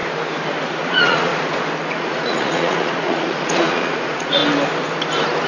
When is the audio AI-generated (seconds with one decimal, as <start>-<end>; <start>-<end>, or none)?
0.7-1.3; 1.9-4.4